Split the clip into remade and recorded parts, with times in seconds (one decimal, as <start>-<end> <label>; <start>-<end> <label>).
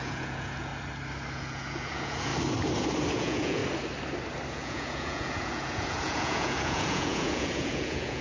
0.0-0.7 remade; 0.7-1.3 recorded; 1.3-2.3 remade; 2.3-3.1 recorded; 3.1-3.6 remade; 3.6-4.5 recorded; 4.5-8.2 remade